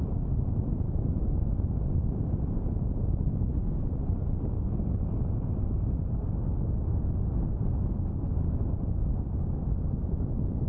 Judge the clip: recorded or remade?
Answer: recorded